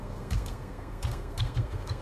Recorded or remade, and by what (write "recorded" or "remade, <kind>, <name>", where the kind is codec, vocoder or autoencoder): remade, codec, SNAC